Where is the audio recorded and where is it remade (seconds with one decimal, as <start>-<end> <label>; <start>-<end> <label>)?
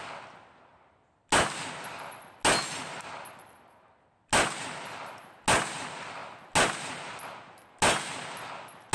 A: 0.0-8.9 recorded